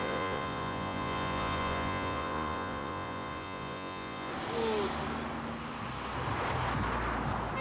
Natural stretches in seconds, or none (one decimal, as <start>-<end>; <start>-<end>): 4.3-7.6